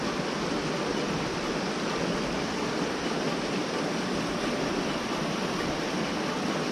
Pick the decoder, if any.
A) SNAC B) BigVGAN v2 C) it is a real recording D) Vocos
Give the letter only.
C